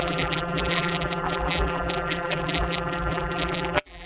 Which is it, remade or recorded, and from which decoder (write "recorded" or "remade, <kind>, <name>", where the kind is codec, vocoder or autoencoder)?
remade, vocoder, BigVGAN v2